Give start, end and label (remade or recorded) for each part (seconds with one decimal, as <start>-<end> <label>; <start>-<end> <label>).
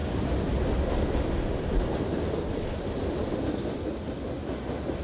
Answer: 0.0-5.0 recorded